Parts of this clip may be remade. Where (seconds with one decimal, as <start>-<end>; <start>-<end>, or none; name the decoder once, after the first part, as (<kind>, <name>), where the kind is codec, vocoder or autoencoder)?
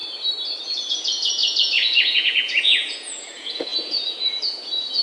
0.9-5.0 (vocoder, Vocos)